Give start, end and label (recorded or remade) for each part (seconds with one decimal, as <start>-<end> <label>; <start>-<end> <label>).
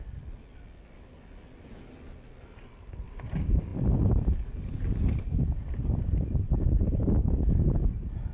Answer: 0.0-8.3 recorded